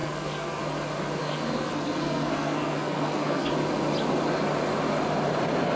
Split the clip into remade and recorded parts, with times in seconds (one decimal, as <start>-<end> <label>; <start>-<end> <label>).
0.0-0.6 remade; 0.6-1.2 recorded; 1.2-3.5 remade; 3.5-5.8 recorded

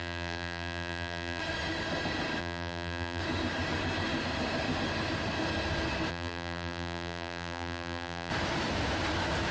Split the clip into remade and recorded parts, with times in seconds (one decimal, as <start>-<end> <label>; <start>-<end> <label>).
0.0-1.4 remade; 1.4-2.4 recorded; 2.4-3.2 remade; 3.2-6.1 recorded; 6.1-8.3 remade; 8.3-9.5 recorded

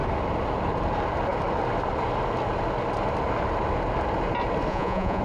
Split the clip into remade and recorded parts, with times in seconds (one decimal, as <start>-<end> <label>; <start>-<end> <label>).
0.0-4.7 recorded; 4.7-5.2 remade

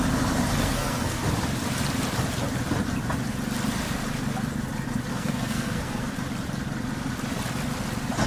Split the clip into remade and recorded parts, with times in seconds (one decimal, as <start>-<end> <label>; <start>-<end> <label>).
0.0-0.6 recorded; 0.6-1.2 remade; 1.2-5.1 recorded; 5.1-6.1 remade; 6.1-8.3 recorded